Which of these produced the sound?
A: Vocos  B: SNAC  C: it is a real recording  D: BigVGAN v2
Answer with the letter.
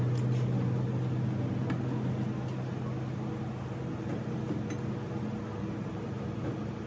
C